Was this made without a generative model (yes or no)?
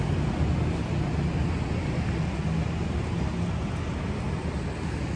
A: yes